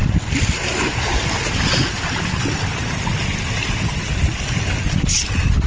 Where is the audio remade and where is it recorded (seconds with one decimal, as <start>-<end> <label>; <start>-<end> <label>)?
0.0-5.7 recorded